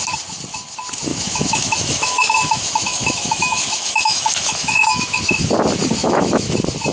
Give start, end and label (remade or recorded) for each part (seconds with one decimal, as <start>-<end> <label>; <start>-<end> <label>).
0.0-1.1 recorded; 1.1-5.2 remade; 5.2-6.0 recorded; 6.0-6.5 remade; 6.5-6.9 recorded

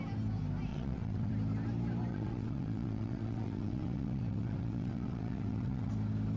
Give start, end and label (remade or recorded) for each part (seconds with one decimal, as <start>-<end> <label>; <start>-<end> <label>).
0.0-0.7 recorded; 0.7-1.3 remade; 1.3-2.1 recorded; 2.1-5.9 remade; 5.9-6.4 recorded

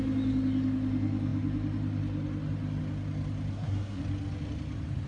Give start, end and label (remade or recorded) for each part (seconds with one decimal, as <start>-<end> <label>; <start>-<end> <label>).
0.0-3.5 recorded; 3.5-4.0 remade; 4.0-5.1 recorded

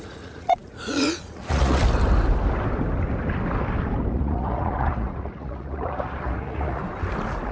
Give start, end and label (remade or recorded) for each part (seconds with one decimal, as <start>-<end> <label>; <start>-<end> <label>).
0.0-1.8 remade; 1.8-4.1 recorded; 4.1-6.8 remade; 6.8-7.5 recorded

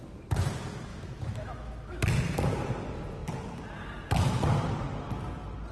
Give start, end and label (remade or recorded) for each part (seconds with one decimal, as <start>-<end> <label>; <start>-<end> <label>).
0.0-0.9 recorded; 0.9-2.0 remade; 2.0-5.7 recorded

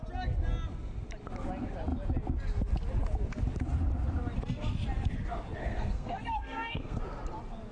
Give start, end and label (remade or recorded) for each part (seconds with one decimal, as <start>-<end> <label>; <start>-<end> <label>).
0.0-5.6 recorded; 5.6-7.0 remade; 7.0-7.7 recorded

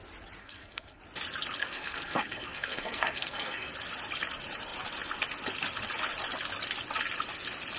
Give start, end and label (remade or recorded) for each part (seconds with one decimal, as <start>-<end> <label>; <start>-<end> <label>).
0.0-0.4 recorded; 0.4-1.0 remade; 1.0-1.6 recorded; 1.6-3.7 remade; 3.7-7.8 recorded